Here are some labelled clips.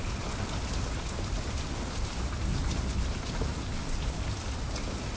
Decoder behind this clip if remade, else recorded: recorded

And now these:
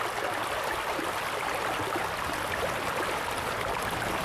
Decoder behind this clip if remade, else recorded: recorded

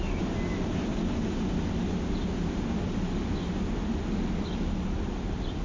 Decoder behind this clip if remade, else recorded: recorded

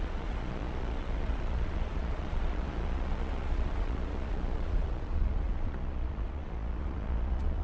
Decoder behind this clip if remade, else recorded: remade, vocoder, Vocos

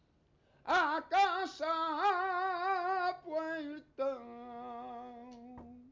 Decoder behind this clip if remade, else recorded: recorded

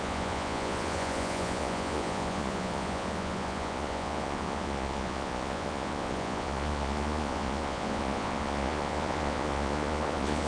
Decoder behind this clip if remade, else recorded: remade, vocoder, Vocos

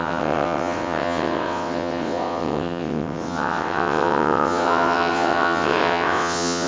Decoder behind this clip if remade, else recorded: remade, vocoder, WaveNeXt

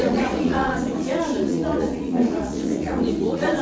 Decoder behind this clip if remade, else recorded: remade, vocoder, Vocos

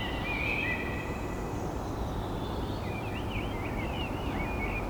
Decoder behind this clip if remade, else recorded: recorded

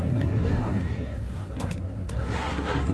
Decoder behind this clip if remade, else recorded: remade, codec, SNAC